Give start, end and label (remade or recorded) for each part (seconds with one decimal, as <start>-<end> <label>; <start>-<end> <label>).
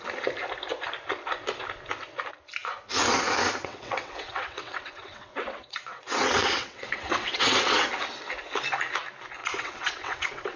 0.0-3.6 recorded; 3.6-7.9 remade; 7.9-9.4 recorded; 9.4-10.6 remade